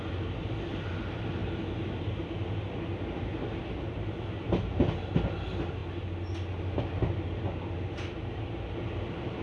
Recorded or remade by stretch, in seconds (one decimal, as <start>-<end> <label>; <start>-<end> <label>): 0.0-9.4 recorded

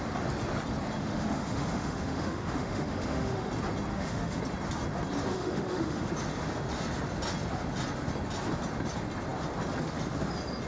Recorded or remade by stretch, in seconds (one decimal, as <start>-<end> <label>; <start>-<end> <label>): 0.0-1.0 recorded; 1.0-3.5 remade; 3.5-3.9 recorded; 3.9-4.4 remade; 4.4-5.3 recorded; 5.3-6.1 remade; 6.1-10.7 recorded